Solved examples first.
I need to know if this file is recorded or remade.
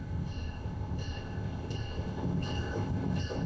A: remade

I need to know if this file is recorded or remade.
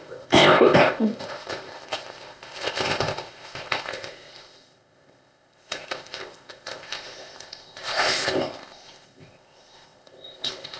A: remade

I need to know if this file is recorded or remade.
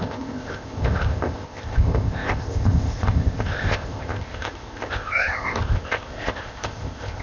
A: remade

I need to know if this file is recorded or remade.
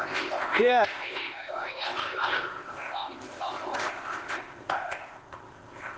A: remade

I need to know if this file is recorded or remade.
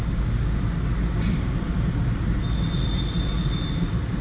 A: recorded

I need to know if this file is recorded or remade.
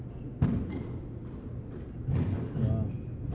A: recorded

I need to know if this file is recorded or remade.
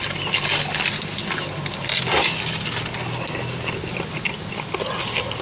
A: recorded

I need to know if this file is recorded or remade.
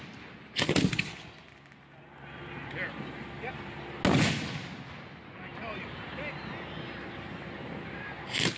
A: recorded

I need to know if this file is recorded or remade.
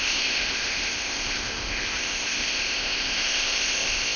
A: remade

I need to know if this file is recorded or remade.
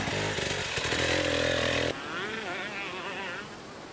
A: recorded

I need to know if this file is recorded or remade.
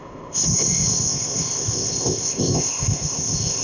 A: remade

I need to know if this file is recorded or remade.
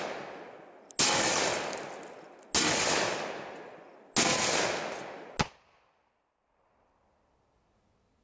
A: recorded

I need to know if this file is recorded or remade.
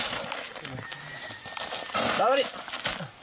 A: recorded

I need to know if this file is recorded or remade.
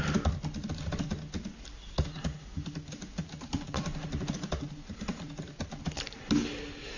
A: recorded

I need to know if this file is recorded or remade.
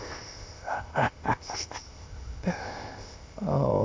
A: remade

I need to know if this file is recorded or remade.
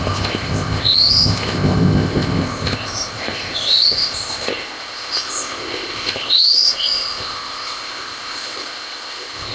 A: remade